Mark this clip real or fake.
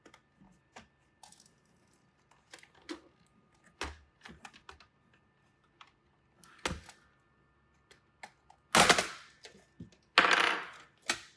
real